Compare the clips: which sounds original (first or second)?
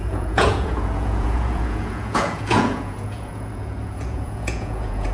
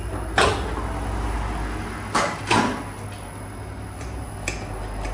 second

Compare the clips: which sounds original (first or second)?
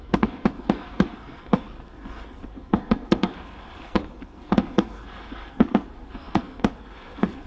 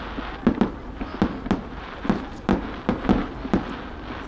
second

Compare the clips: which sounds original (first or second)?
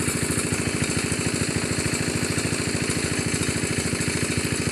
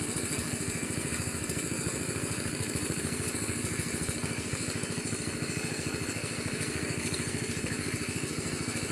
first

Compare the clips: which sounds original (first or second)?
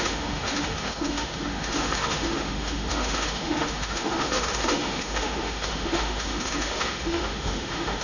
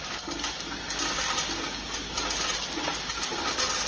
second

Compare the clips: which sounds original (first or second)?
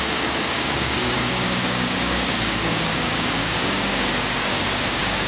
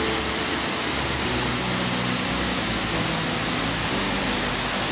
second